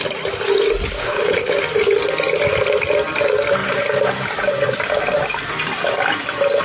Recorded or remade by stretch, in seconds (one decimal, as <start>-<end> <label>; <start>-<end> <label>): 0.0-1.0 recorded; 1.0-1.5 remade; 1.5-6.6 recorded

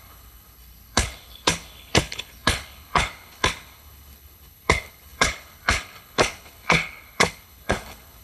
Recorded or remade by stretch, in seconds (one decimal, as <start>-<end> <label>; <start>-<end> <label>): 0.0-8.2 remade